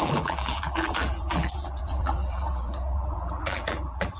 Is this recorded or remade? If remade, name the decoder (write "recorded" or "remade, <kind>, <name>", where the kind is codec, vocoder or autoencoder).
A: remade, vocoder, BigVGAN v2